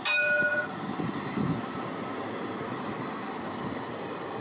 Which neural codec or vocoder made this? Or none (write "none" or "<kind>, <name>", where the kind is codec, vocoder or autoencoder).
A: none